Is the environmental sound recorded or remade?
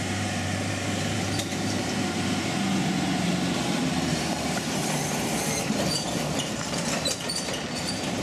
remade